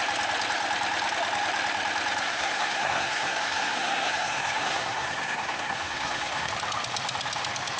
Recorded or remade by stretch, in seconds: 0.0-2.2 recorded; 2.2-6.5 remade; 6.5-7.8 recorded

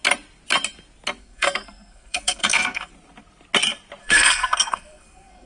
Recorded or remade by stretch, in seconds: 0.0-1.2 recorded; 1.2-2.9 remade; 2.9-4.0 recorded; 4.0-5.5 remade